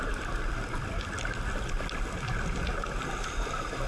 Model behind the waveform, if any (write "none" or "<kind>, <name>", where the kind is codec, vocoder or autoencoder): none